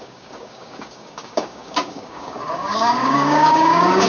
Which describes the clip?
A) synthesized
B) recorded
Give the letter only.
A